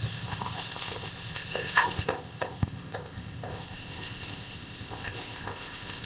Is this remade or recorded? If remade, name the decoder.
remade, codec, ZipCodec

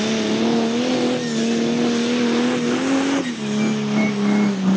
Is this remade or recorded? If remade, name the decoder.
recorded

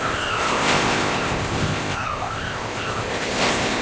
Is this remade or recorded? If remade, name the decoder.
remade, codec, ZipCodec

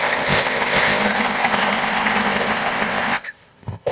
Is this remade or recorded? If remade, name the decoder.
remade, codec, ZipCodec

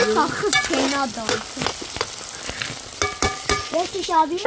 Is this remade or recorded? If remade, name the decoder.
recorded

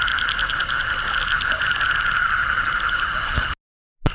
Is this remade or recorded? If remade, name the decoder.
recorded